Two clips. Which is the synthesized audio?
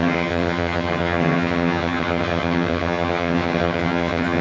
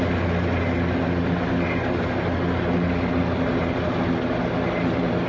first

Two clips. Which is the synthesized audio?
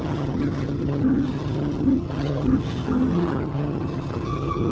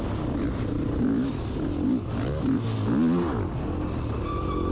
first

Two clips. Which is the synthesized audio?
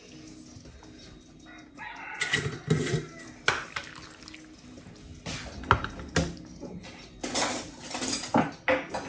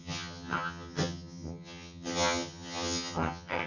second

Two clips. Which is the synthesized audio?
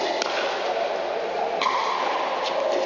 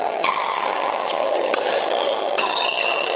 second